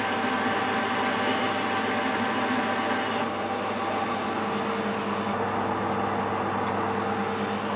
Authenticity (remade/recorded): recorded